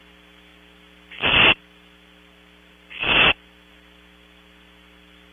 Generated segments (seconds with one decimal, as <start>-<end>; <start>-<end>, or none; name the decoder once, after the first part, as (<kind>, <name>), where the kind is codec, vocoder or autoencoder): none